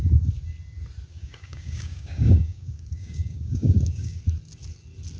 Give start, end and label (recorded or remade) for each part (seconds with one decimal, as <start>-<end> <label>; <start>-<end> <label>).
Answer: 0.0-1.1 recorded; 1.1-4.2 remade; 4.2-5.2 recorded